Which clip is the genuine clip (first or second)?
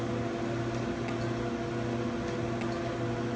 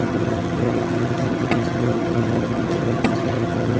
first